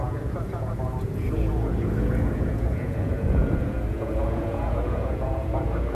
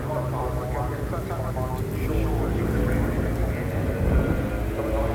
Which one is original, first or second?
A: second